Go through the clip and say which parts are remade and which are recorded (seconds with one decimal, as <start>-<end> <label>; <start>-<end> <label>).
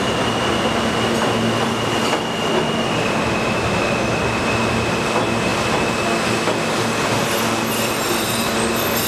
0.0-9.1 recorded